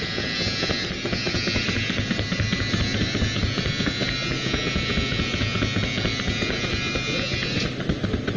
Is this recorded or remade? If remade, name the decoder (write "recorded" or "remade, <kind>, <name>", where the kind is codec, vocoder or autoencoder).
recorded